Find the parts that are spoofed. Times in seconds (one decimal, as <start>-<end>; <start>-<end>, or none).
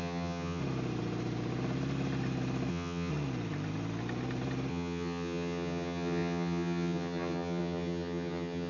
0.0-0.6; 2.7-3.1; 4.7-8.7